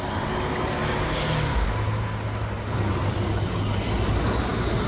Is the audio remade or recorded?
recorded